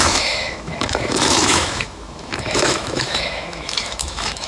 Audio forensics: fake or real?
fake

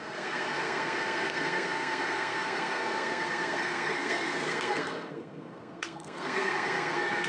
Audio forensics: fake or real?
fake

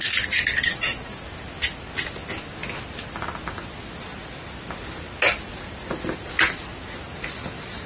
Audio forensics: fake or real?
real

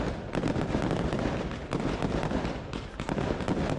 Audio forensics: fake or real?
real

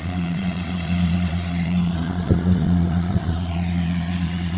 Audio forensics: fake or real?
fake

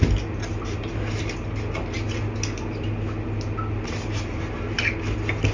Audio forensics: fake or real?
real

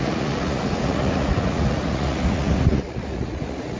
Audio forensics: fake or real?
fake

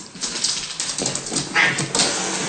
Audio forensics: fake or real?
real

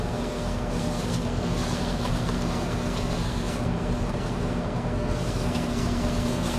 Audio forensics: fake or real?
fake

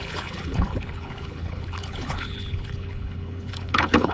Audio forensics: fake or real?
fake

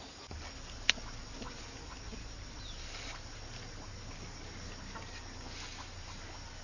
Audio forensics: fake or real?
real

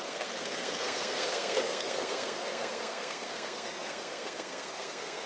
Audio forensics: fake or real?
fake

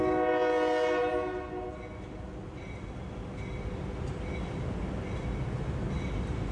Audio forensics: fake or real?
real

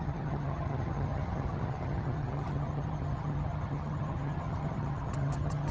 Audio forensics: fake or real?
fake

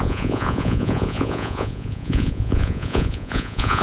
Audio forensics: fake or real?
fake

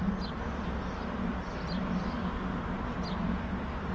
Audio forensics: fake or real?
real